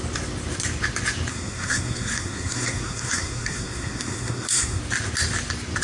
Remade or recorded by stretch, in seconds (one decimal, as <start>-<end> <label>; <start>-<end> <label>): 0.0-1.3 recorded; 1.3-4.8 remade; 4.8-5.8 recorded